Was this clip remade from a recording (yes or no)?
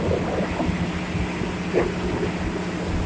no